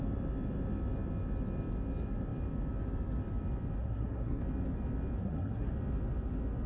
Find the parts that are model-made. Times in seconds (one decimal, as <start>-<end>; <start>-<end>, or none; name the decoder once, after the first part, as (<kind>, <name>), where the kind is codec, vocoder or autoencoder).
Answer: 3.8-4.4 (codec, SNAC); 5.2-5.7